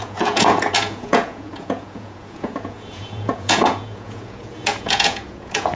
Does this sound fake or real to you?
fake